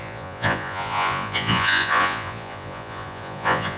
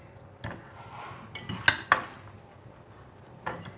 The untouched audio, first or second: second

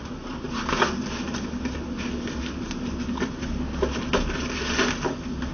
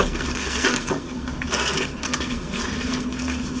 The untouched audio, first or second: first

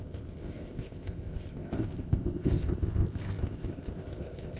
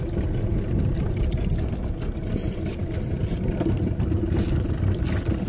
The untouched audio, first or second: second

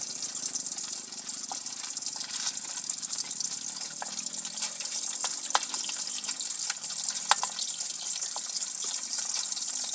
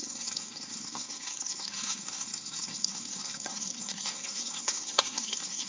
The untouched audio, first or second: first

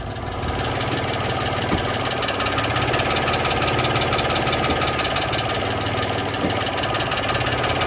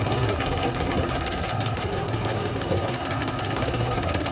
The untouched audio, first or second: first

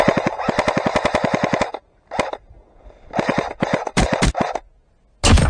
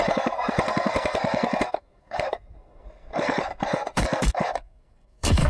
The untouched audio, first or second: first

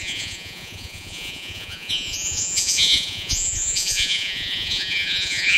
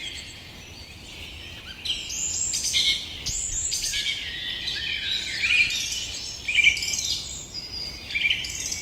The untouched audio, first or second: second